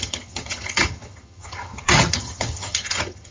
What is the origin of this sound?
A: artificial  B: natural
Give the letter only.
A